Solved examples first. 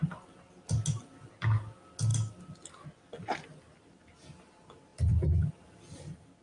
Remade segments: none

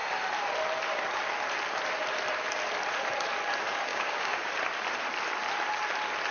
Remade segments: 3.9-4.5

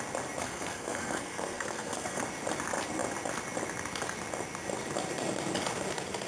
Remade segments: 0.4-2.2